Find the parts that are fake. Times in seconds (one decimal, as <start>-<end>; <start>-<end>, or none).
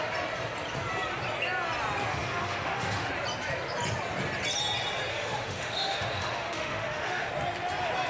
2.1-3.1; 5.1-7.3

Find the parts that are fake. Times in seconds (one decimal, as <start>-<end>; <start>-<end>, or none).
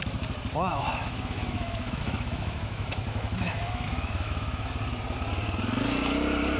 0.7-4.7